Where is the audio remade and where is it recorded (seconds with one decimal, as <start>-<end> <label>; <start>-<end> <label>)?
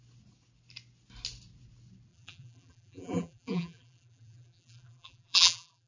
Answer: 0.0-2.1 recorded; 2.1-5.9 remade